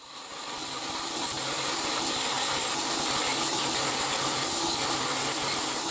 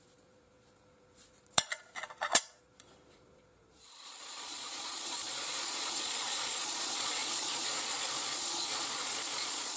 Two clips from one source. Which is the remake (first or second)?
second